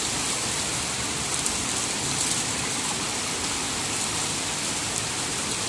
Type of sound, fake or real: fake